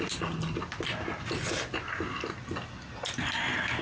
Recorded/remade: recorded